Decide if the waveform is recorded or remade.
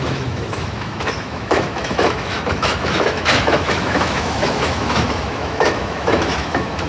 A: remade